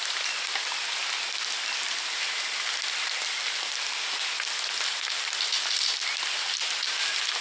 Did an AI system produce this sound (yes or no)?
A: no